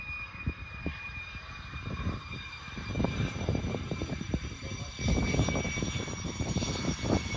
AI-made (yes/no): yes